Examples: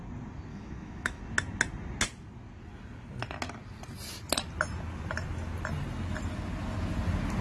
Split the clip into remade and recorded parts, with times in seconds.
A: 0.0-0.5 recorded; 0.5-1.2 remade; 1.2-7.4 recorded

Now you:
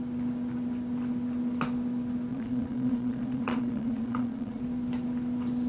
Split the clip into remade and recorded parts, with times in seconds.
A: 0.0-2.3 recorded; 2.3-4.6 remade; 4.6-5.7 recorded

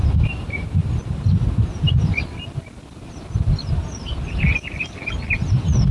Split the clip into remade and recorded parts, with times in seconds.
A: 0.0-5.9 recorded

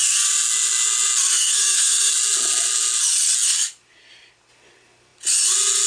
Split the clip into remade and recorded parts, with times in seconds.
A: 0.0-1.2 recorded; 1.2-2.1 remade; 2.1-5.9 recorded

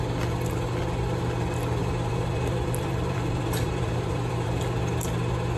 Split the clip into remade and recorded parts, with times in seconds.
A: 0.0-1.8 recorded; 1.8-4.6 remade; 4.6-5.6 recorded